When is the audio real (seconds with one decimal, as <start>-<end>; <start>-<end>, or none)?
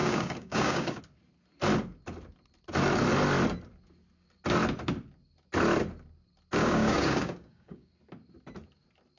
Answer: 1.0-6.6; 7.9-9.2